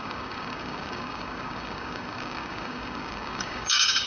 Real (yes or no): no